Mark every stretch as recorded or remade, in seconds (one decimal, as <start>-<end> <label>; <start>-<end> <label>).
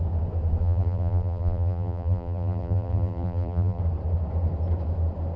0.0-0.6 recorded; 0.6-3.8 remade; 3.8-5.4 recorded